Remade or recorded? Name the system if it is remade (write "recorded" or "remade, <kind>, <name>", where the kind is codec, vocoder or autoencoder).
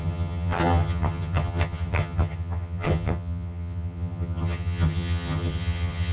remade, vocoder, HiFi-GAN